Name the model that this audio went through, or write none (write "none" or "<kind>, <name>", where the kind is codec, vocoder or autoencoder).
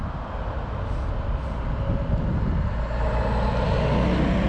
none